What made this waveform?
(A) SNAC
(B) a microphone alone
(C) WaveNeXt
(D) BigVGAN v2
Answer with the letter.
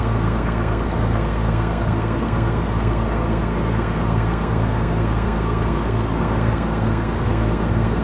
A